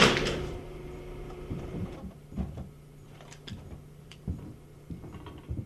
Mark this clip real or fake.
fake